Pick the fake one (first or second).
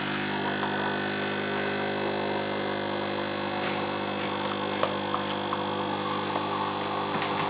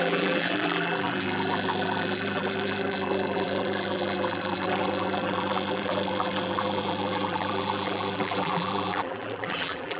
second